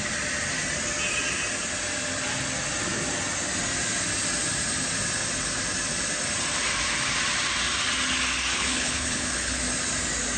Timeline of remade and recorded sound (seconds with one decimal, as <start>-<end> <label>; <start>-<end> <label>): 0.0-8.5 recorded; 8.5-9.6 remade; 9.6-10.4 recorded